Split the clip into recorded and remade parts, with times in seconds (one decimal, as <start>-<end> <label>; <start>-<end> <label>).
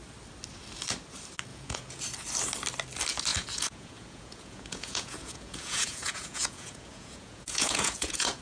0.0-1.5 recorded; 1.5-2.0 remade; 2.0-3.3 recorded; 3.3-8.4 remade